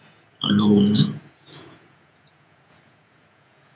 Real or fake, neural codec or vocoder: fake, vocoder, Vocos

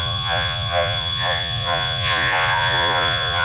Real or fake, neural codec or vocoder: fake, vocoder, Vocos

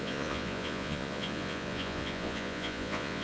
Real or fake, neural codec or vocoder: fake, vocoder, Vocos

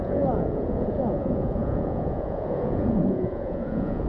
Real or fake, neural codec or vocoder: fake, vocoder, Vocos